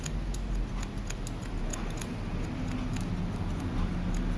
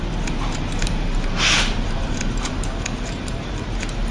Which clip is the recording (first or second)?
first